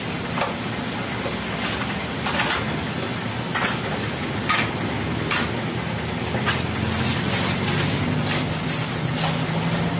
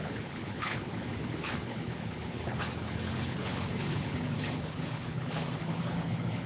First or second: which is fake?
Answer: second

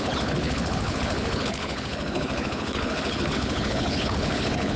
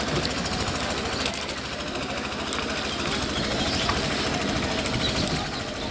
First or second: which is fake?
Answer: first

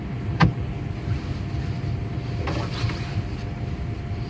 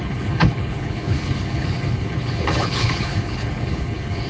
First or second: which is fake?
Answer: second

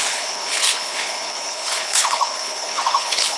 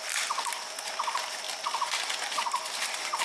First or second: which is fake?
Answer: first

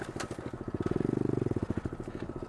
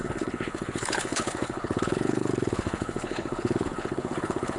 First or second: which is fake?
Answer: second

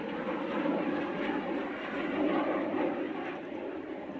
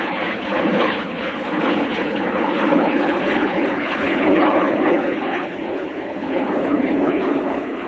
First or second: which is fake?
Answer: second